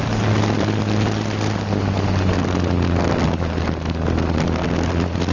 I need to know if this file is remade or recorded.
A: recorded